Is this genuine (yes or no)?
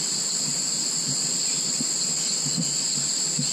yes